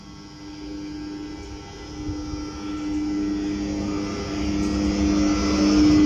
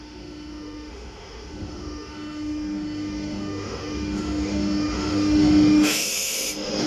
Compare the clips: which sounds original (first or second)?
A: first